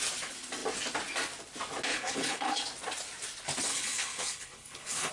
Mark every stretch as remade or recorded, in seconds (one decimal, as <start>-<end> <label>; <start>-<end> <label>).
0.0-1.9 recorded; 1.9-2.6 remade; 2.6-3.7 recorded; 3.7-5.1 remade